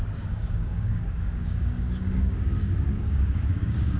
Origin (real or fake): fake